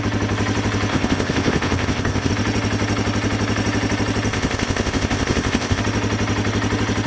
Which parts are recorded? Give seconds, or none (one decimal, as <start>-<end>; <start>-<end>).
0.0-0.9; 2.3-4.3; 5.8-7.1

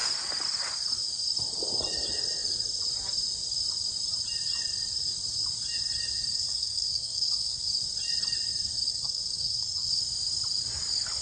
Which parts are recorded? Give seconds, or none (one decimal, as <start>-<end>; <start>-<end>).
0.0-6.3; 7.7-8.9; 9.9-11.2

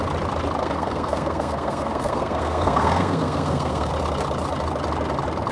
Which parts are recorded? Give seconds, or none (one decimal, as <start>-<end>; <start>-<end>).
0.0-0.6; 3.9-5.5